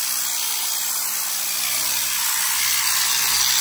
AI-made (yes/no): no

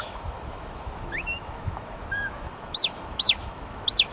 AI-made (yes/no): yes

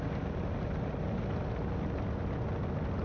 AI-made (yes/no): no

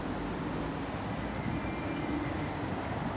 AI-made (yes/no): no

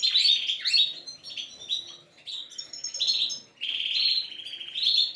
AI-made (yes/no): no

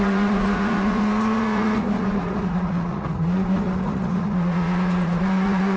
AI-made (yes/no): yes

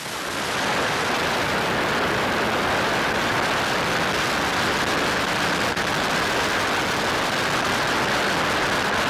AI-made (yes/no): no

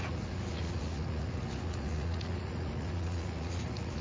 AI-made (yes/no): yes